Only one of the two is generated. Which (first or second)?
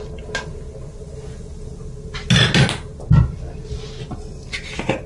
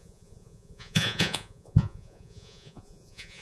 second